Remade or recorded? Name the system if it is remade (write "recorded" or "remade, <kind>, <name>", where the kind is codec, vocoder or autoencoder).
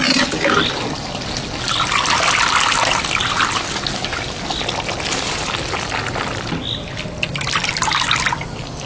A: recorded